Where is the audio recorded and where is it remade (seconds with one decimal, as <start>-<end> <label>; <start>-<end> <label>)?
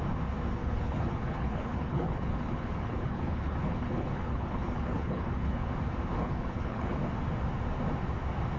0.0-0.6 recorded; 0.6-5.7 remade; 5.7-6.2 recorded; 6.2-7.0 remade; 7.0-8.6 recorded